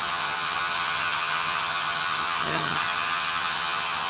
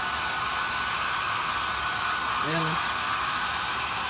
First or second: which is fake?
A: first